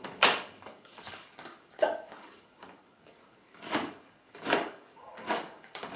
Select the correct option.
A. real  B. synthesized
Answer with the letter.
B